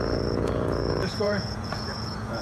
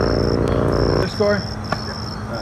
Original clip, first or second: second